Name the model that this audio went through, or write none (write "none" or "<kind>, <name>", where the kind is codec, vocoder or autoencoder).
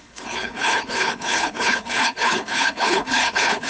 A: codec, HILCodec